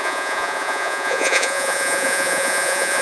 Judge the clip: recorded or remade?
remade